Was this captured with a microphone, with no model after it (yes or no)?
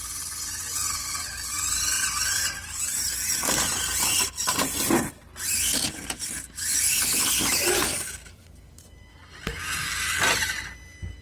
yes